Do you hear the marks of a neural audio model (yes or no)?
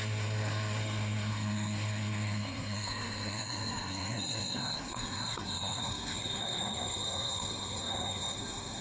yes